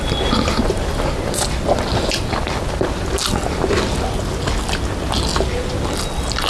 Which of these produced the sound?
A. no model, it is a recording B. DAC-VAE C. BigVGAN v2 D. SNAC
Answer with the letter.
A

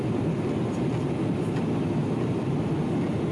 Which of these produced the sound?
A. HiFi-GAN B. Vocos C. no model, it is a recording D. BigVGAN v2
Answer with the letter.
C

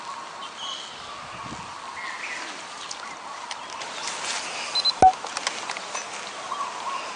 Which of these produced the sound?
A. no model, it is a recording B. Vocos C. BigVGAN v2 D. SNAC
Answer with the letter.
A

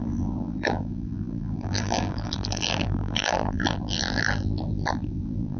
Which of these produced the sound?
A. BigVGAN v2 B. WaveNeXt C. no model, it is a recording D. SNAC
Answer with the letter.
A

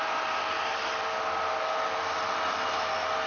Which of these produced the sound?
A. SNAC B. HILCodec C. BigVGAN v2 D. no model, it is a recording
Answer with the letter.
D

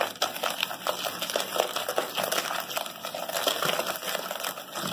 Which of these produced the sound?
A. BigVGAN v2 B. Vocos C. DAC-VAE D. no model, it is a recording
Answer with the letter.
D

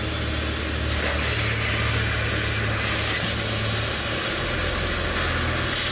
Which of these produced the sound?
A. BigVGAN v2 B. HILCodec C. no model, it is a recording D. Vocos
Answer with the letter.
C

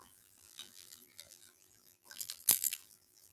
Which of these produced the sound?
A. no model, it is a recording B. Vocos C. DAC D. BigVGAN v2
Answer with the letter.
D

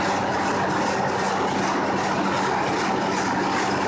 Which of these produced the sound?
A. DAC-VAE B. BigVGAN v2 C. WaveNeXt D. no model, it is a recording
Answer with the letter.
D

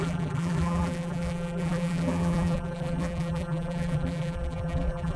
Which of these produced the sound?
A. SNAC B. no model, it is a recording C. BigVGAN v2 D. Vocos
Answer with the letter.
C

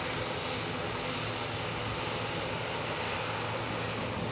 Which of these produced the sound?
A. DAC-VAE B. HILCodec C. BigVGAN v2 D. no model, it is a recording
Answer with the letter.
D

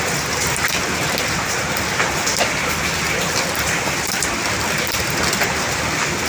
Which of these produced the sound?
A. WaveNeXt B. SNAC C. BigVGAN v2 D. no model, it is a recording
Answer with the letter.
D